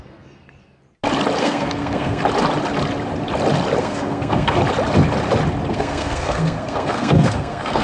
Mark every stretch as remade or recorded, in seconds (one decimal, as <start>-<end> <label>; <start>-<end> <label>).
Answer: 0.0-0.8 remade; 0.8-1.4 recorded; 1.4-2.2 remade; 2.2-3.8 recorded; 3.8-4.6 remade; 4.6-5.7 recorded; 5.7-7.8 remade